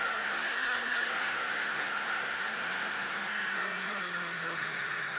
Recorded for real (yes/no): no